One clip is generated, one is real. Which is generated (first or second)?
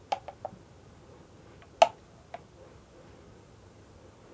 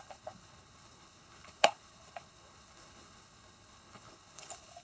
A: second